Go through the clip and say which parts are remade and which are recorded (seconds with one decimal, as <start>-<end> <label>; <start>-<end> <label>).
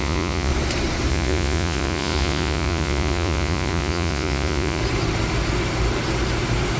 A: 0.0-0.5 remade; 0.5-1.1 recorded; 1.1-4.8 remade; 4.8-6.8 recorded